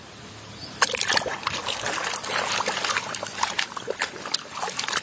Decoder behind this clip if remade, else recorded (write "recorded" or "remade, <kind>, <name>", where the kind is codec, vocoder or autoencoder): recorded